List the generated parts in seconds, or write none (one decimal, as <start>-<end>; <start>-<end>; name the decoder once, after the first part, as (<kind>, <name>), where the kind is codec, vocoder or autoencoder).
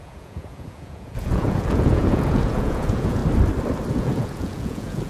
0.0-3.2 (vocoder, Vocos); 3.9-5.1